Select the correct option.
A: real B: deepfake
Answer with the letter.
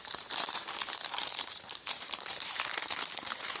B